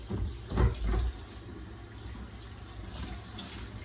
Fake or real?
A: real